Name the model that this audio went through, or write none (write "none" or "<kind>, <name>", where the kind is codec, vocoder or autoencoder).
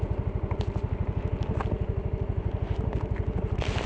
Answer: none